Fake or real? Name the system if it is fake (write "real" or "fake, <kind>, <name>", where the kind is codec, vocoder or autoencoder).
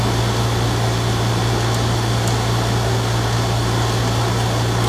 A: real